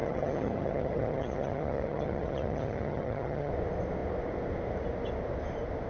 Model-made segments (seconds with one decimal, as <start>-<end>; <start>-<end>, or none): 0.0-3.5